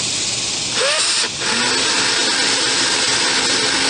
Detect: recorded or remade recorded